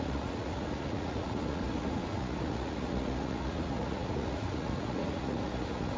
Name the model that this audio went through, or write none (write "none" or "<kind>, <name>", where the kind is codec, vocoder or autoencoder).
vocoder, Vocos